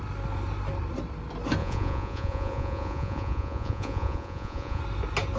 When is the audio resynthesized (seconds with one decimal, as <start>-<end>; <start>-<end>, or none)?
1.6-4.8